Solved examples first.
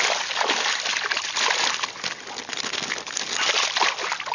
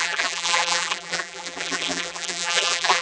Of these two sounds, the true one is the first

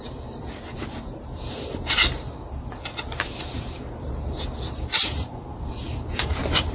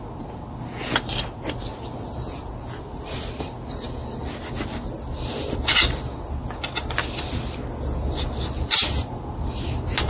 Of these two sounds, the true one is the second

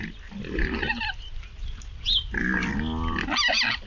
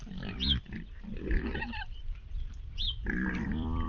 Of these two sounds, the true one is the first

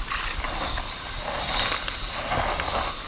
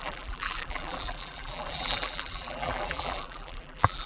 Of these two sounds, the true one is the first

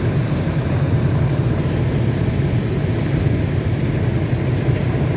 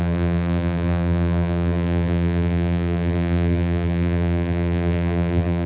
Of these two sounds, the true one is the first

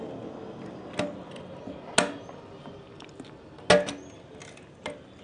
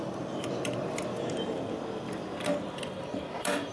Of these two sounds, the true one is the first